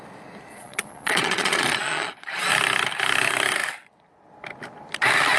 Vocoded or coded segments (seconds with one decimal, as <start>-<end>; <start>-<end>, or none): 0.5-2.5